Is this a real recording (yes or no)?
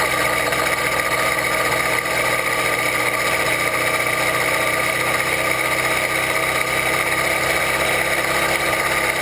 yes